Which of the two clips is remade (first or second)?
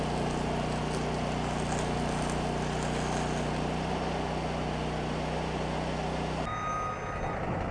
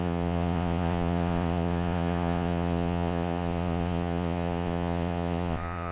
second